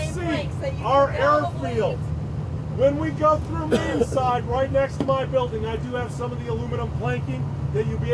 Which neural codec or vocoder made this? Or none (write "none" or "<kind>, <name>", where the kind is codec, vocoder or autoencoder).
none